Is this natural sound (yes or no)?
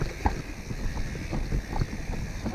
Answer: yes